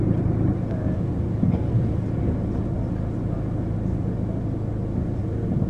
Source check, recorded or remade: recorded